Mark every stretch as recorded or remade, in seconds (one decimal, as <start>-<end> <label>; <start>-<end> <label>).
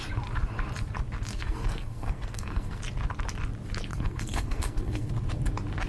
0.0-1.3 recorded; 1.3-2.8 remade; 2.8-3.9 recorded; 3.9-5.1 remade; 5.1-5.9 recorded